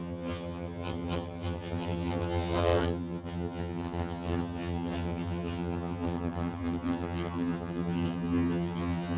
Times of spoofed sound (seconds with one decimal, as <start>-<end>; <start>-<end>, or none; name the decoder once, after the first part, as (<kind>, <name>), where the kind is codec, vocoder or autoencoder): 0.0-9.2 (vocoder, HiFi-GAN)